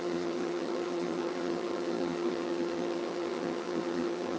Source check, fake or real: fake